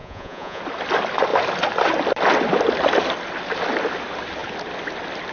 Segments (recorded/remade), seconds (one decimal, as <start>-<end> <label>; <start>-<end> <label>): 0.0-0.6 remade; 0.6-5.3 recorded

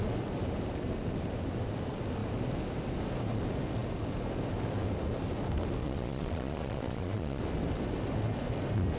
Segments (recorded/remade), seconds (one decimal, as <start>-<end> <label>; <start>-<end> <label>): 0.0-5.8 recorded; 5.8-7.4 remade; 7.4-9.0 recorded

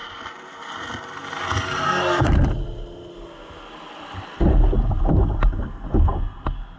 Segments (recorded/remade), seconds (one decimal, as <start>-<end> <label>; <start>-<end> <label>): 0.0-6.8 recorded

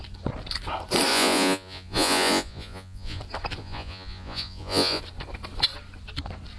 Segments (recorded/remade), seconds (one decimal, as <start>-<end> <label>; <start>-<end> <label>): 0.0-1.1 recorded; 1.1-3.2 remade; 3.2-3.6 recorded; 3.6-5.0 remade; 5.0-6.6 recorded

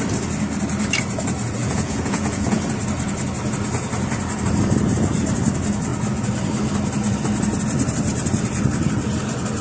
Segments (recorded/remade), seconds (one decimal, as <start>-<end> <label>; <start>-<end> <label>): 0.0-1.6 recorded; 1.6-2.6 remade; 2.6-9.6 recorded